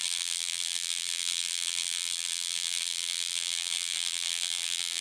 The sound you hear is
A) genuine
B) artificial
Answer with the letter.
B